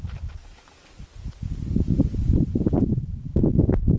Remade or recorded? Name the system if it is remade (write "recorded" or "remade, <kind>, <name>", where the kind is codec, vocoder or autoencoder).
remade, vocoder, BigVGAN v2